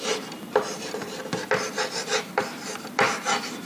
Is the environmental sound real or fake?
fake